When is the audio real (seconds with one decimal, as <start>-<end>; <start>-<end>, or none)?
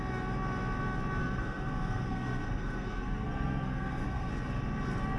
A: 0.0-1.2; 4.3-5.2